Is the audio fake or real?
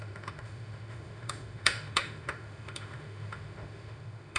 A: fake